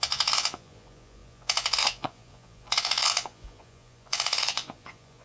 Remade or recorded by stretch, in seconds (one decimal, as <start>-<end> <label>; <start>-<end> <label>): 0.0-5.2 remade